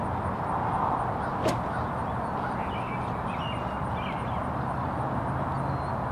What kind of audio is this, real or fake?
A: real